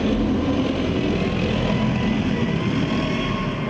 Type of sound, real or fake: real